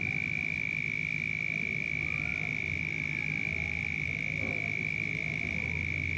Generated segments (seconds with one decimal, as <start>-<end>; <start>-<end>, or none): none